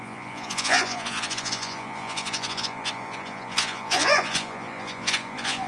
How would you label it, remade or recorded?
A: remade